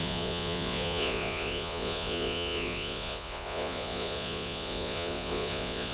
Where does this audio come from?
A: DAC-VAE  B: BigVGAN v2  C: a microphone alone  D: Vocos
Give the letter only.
D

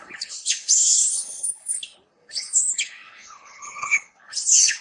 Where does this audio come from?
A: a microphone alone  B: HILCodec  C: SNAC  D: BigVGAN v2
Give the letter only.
B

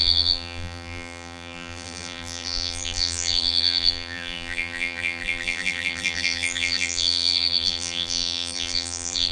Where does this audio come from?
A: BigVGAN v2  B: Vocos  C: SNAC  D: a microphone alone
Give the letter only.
A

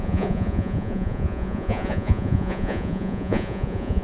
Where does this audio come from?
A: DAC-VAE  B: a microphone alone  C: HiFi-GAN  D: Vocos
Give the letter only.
D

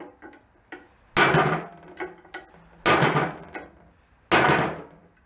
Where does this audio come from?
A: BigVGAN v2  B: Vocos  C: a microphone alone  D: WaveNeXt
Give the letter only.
C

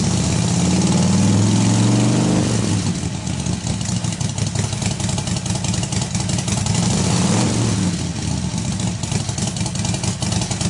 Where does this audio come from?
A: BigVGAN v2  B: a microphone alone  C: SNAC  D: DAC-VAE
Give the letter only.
B